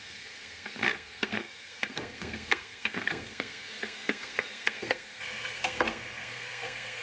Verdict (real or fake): fake